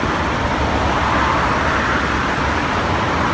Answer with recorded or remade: recorded